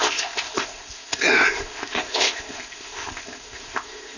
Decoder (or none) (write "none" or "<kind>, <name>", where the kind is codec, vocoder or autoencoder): codec, ZipCodec